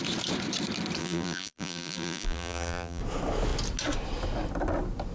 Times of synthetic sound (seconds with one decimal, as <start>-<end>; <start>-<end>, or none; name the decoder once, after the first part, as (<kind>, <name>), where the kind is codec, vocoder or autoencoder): 1.0-3.0 (vocoder, BigVGAN v2)